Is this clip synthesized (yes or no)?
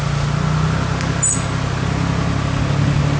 no